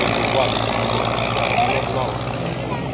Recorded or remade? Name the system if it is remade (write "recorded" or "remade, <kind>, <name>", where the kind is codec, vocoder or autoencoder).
recorded